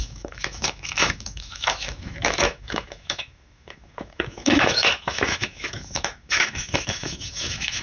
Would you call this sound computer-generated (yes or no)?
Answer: yes